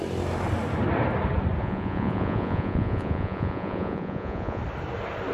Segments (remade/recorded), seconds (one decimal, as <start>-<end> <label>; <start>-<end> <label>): 0.0-1.6 recorded; 1.6-4.6 remade; 4.6-5.3 recorded